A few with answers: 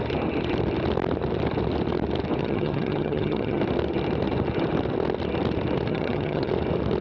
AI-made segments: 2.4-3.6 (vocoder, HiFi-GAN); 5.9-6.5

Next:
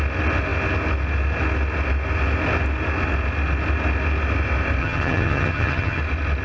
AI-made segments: 4.8-6.0 (vocoder, HiFi-GAN)

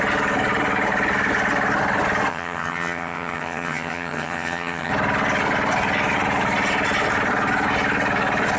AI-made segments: 2.3-4.9 (vocoder, HiFi-GAN)